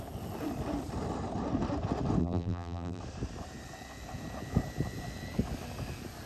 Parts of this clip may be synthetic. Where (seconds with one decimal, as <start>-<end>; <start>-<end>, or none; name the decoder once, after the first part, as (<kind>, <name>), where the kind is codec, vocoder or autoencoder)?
2.2-3.0 (vocoder, BigVGAN v2)